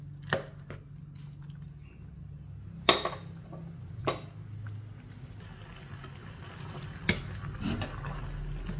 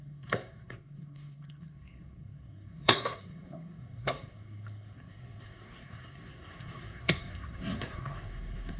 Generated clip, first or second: second